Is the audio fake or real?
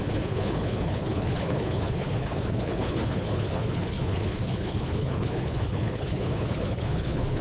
fake